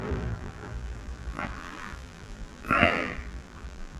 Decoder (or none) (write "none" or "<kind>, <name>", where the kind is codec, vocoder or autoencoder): vocoder, BigVGAN v2